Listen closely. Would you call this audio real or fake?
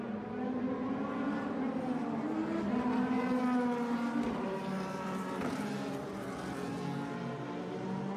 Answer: real